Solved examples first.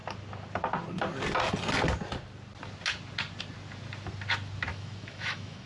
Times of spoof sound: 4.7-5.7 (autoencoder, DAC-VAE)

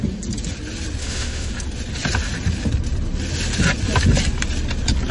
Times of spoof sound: 1.0-1.5 (autoencoder, DAC-VAE)